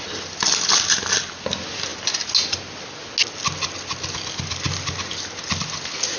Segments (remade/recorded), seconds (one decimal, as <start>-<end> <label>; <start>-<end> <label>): 0.0-6.2 recorded